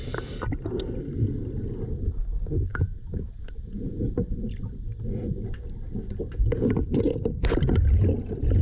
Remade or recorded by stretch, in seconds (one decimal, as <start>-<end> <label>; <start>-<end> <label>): 0.0-2.7 recorded; 2.7-4.0 remade; 4.0-8.6 recorded